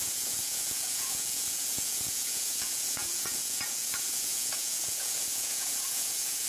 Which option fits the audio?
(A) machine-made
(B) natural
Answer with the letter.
A